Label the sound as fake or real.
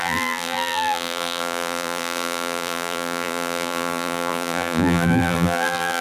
fake